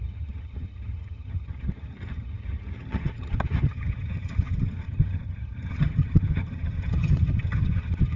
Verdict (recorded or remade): remade